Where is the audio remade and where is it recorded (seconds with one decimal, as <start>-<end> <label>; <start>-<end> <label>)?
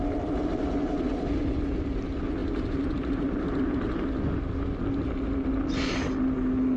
0.0-2.4 recorded; 2.4-3.2 remade; 3.2-6.8 recorded